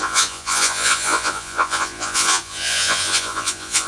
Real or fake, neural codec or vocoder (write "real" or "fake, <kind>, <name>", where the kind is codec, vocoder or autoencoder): fake, vocoder, Vocos